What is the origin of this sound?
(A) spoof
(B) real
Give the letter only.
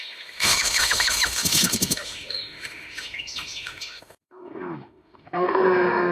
A